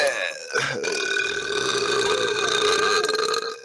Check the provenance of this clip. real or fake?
real